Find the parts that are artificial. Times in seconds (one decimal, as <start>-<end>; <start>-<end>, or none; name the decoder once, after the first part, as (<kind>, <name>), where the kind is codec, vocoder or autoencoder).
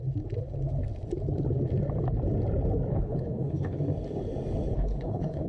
2.9-3.8 (codec, HILCodec); 4.7-5.5